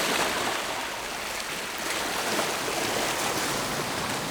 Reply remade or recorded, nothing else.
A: recorded